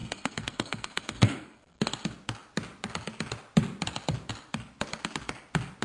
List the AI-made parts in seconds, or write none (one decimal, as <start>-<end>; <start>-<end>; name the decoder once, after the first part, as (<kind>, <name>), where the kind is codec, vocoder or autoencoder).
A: 0.0-1.9 (codec, SNAC)